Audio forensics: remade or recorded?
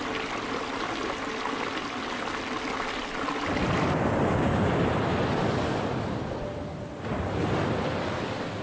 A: recorded